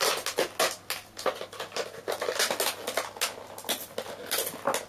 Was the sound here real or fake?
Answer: real